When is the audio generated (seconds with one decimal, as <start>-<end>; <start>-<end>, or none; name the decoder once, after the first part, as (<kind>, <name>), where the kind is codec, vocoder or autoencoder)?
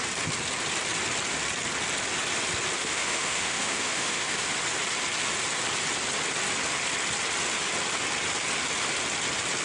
2.8-4.5 (autoencoder, DAC-VAE)